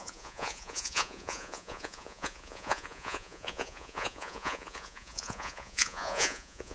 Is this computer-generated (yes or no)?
yes